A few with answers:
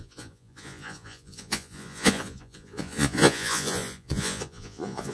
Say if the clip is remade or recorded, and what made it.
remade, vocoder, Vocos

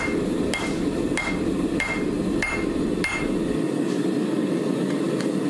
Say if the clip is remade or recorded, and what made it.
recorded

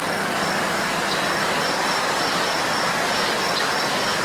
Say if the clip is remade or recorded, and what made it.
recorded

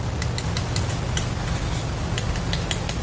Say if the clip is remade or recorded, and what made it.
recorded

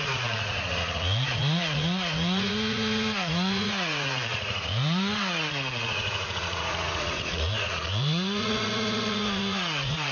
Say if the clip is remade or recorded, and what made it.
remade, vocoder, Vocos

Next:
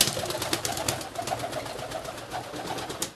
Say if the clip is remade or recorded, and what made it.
recorded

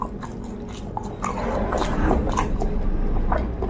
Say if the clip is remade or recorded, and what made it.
recorded